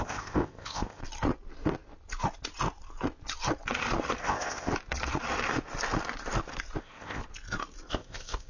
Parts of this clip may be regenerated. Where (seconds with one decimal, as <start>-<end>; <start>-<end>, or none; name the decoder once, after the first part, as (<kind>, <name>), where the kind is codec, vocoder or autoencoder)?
0.0-1.0 (codec, ZipCodec); 4.2-4.7; 6.8-7.2; 7.9-8.5